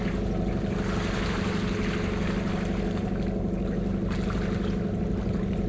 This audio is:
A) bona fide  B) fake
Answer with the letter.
A